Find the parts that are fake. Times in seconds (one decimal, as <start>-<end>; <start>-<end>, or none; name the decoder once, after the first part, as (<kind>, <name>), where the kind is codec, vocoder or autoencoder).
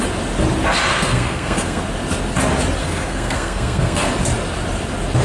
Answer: 0.9-1.8 (codec, SNAC); 2.8-4.1